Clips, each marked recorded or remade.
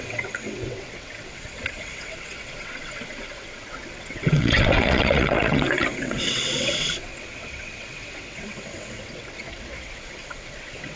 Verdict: remade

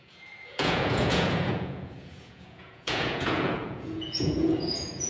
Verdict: remade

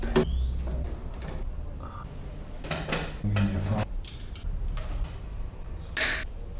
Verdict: recorded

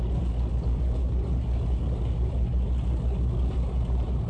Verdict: recorded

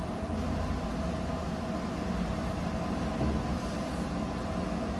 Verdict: recorded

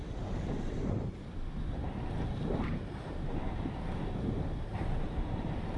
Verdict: remade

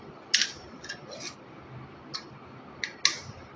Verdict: recorded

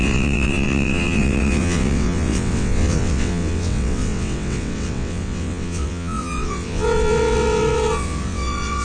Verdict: remade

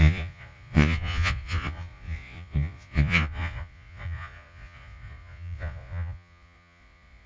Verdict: remade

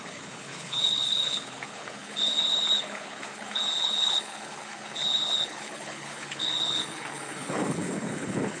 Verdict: remade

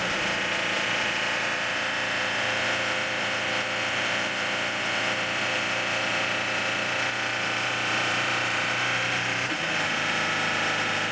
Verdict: remade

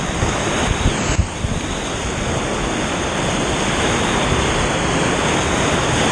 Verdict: recorded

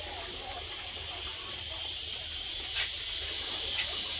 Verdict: remade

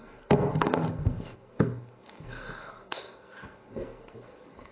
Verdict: remade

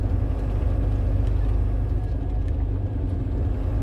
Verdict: recorded